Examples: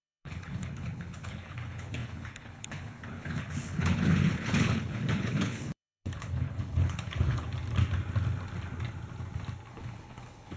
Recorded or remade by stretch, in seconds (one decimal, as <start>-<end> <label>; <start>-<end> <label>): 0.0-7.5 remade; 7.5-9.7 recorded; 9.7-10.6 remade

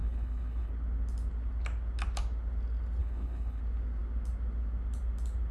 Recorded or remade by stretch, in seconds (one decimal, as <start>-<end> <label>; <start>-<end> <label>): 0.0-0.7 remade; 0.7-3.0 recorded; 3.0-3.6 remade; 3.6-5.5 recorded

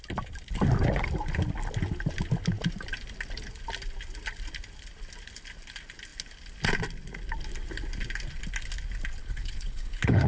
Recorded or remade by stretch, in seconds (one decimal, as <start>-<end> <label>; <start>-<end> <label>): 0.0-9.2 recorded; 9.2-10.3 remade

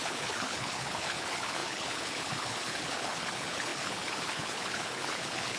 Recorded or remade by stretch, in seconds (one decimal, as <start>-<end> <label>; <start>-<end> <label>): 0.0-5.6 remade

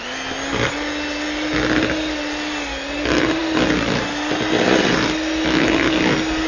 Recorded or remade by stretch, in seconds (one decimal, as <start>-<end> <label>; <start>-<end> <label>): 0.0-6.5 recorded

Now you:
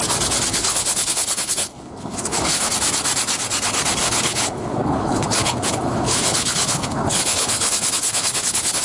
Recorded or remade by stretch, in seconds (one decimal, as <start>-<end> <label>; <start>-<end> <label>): 0.0-0.5 recorded; 0.5-2.7 remade; 2.7-4.0 recorded; 4.0-8.8 remade

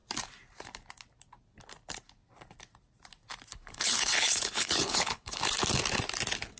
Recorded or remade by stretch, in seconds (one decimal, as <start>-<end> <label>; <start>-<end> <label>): 0.0-3.5 recorded; 3.5-5.4 remade; 5.4-6.6 recorded

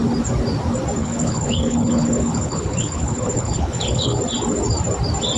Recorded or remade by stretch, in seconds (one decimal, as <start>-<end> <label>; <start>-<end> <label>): 0.0-1.0 recorded; 1.0-4.2 remade; 4.2-5.4 recorded